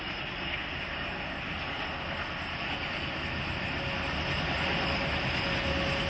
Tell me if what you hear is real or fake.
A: real